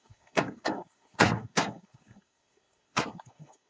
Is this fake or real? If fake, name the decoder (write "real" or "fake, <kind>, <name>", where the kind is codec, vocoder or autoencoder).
fake, codec, SNAC